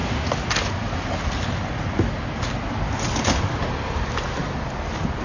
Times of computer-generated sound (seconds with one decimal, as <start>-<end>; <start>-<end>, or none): none